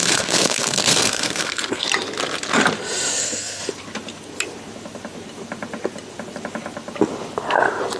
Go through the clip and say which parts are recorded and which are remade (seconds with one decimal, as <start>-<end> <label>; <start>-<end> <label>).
0.0-1.9 remade; 1.9-3.2 recorded; 3.2-3.6 remade; 3.6-8.0 recorded